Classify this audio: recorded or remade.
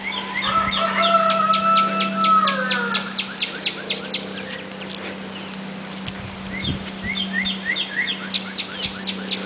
recorded